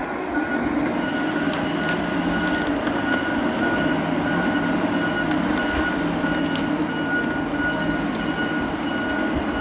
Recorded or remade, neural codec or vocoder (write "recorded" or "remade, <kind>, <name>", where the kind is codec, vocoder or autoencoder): recorded